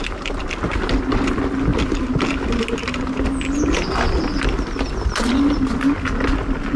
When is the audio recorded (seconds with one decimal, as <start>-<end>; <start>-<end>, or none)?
0.0-6.8